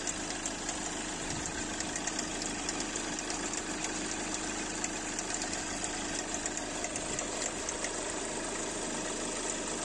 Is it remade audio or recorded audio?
recorded